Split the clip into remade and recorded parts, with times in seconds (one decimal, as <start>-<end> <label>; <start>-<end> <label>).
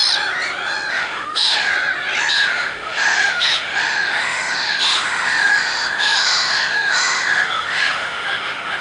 0.0-0.9 recorded; 0.9-1.7 remade; 1.7-2.3 recorded; 2.3-8.8 remade